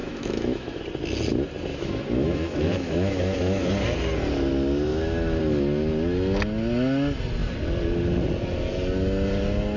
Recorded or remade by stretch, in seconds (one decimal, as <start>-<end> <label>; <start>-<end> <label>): 0.0-0.8 remade; 0.8-1.7 recorded; 1.7-3.7 remade; 3.7-4.9 recorded; 4.9-5.4 remade; 5.4-9.8 recorded